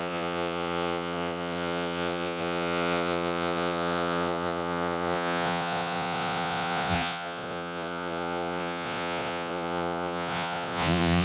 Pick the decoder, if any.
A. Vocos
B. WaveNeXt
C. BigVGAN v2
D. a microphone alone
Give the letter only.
A